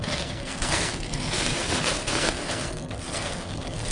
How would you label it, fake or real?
fake